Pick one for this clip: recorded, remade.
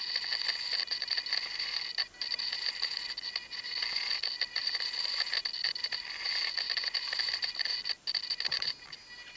recorded